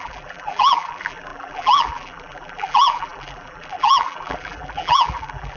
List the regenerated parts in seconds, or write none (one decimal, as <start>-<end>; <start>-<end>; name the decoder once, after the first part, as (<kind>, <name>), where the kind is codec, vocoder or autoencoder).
0.0-5.6 (vocoder, BigVGAN v2)